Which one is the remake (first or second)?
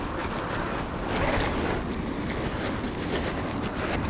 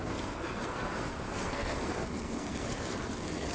second